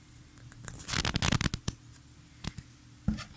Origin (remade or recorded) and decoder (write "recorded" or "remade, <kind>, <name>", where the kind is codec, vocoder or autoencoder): recorded